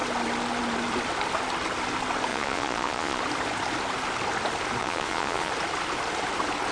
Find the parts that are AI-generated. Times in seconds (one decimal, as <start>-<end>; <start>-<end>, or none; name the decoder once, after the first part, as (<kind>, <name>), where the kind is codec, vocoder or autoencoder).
2.3-3.2 (vocoder, Vocos); 4.8-5.5

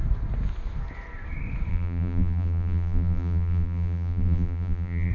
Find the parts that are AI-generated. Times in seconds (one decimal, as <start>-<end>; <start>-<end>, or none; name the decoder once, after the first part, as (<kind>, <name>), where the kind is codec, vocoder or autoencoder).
1.7-5.1 (vocoder, BigVGAN v2)

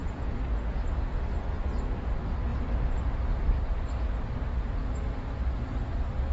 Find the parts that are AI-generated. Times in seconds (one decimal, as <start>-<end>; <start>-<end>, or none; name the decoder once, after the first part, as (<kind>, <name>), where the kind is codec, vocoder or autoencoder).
0.0-1.1 (vocoder, Vocos)

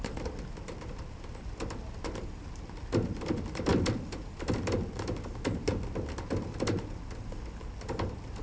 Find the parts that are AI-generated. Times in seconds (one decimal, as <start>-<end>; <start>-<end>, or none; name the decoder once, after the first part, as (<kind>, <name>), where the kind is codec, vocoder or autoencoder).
none